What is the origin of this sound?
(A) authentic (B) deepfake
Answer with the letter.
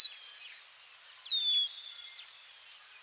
A